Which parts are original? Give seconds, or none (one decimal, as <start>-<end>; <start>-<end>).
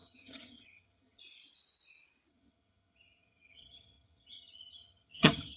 1.2-2.3